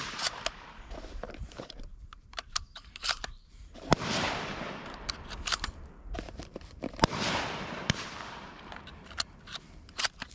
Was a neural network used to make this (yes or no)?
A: yes